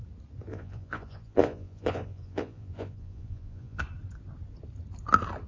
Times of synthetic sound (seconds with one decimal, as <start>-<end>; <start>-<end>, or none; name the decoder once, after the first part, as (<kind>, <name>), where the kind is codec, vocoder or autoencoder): 0.5-3.8 (vocoder, Vocos)